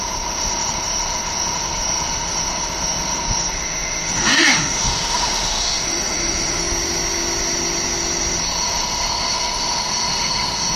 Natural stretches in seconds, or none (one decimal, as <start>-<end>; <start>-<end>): 6.6-8.6